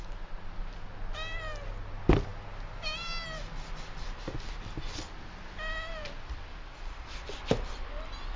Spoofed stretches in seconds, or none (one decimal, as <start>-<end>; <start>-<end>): none